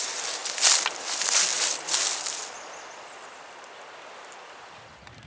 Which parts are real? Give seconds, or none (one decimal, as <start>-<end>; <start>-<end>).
0.0-5.3